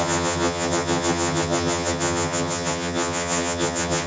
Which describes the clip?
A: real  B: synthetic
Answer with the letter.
B